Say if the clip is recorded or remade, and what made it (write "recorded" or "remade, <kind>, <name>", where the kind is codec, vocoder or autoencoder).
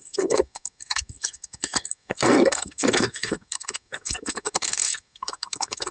remade, codec, SNAC